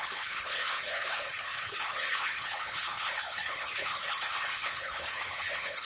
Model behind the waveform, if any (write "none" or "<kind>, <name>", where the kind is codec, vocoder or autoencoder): codec, HILCodec